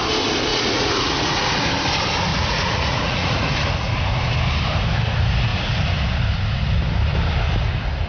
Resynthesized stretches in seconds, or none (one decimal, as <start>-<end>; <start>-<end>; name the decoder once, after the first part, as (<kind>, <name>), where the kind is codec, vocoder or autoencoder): 0.5-1.6 (vocoder, Vocos); 2.3-3.5